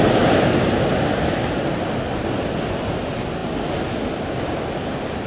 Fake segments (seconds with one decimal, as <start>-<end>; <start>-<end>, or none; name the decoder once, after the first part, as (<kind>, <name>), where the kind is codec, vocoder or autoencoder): none